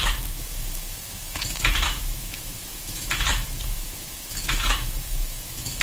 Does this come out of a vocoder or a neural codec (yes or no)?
yes